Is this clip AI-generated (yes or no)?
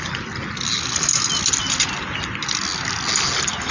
no